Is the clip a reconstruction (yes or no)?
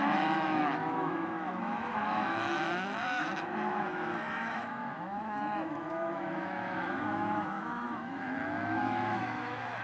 yes